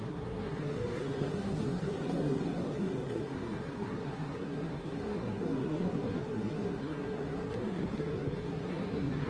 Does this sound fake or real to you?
fake